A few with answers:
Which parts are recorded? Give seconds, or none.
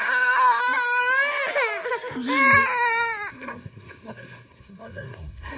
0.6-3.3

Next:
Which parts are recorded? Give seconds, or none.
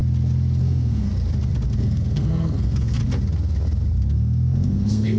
0.0-0.6; 1.1-1.8; 3.0-4.0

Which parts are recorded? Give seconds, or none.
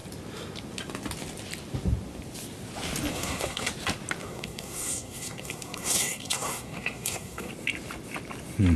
0.0-3.1; 3.7-4.2; 7.5-8.8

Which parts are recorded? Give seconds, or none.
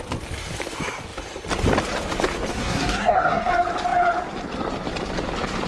0.0-2.5; 3.5-5.7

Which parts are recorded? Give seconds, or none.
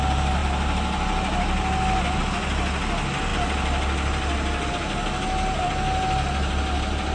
0.0-7.1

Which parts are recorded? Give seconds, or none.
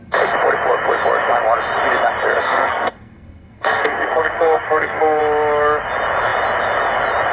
0.0-2.4; 5.2-7.3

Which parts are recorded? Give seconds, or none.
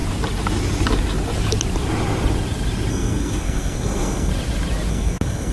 0.0-2.9; 4.3-4.9